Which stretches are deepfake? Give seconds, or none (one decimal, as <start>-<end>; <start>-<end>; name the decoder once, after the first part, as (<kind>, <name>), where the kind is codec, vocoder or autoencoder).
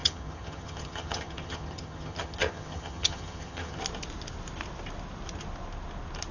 0.0-3.8 (vocoder, HiFi-GAN)